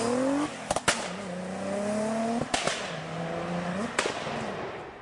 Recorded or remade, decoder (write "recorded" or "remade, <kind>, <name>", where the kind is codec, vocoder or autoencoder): recorded